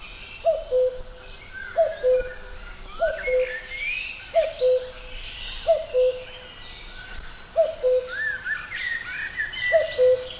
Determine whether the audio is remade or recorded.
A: recorded